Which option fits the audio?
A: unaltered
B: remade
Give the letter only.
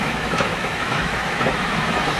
B